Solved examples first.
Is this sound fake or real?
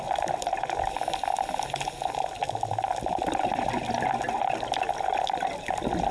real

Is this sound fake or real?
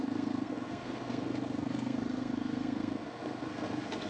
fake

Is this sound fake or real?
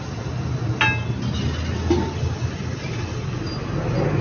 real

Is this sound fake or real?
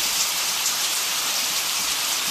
fake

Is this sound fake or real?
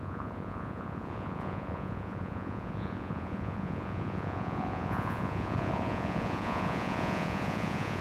fake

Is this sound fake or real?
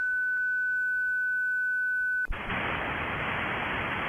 real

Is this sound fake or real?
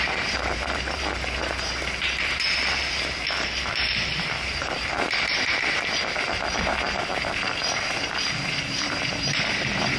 fake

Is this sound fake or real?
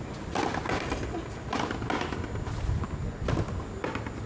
real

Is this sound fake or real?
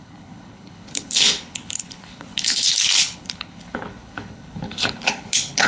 fake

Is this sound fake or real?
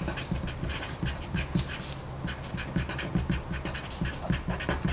real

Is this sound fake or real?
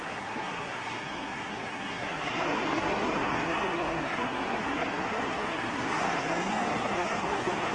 fake